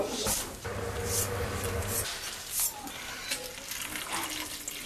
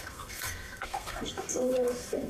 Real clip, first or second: first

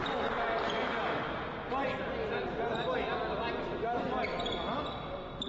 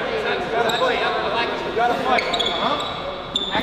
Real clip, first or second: first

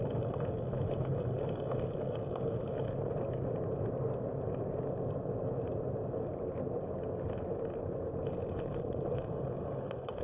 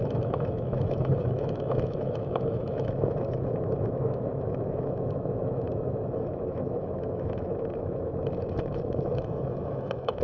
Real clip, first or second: first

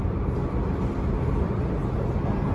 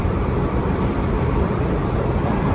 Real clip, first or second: first